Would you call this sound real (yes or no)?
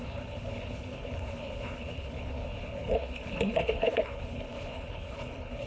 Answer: no